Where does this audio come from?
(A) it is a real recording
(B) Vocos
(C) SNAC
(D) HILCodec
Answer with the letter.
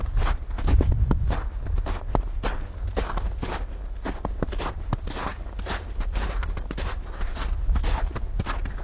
A